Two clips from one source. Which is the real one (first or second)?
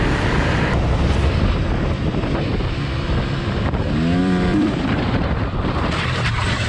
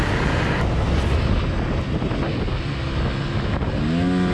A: second